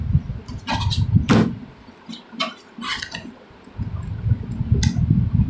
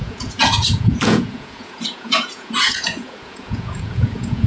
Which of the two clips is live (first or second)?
first